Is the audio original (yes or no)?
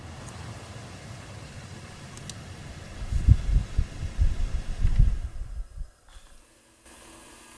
yes